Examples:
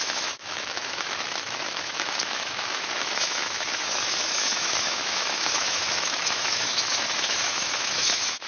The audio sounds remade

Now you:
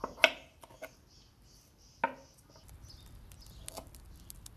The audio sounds recorded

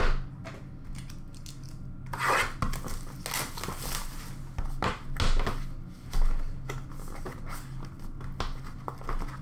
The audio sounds recorded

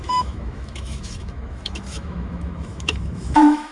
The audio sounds remade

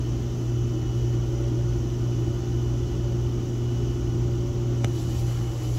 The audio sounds recorded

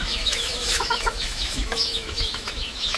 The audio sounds remade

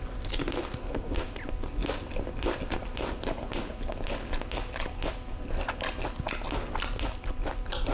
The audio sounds recorded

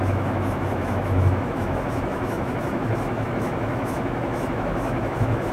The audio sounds remade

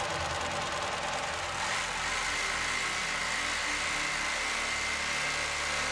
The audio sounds recorded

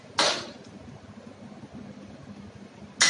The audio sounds recorded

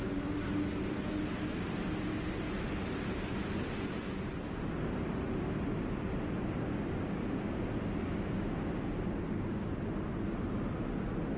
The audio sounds recorded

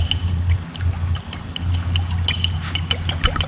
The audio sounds recorded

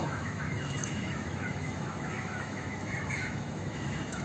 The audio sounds remade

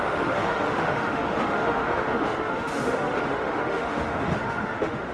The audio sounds remade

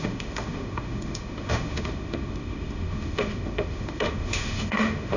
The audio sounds remade